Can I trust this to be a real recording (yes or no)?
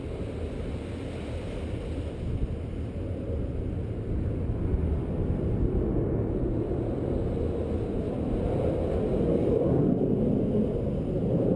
yes